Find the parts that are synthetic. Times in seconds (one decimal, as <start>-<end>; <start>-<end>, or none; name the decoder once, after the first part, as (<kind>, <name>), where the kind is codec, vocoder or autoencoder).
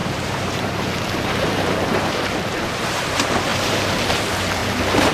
0.0-4.6 (vocoder, BigVGAN v2)